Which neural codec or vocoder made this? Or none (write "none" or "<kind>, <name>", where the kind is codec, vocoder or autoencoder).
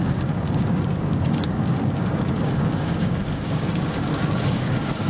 codec, DAC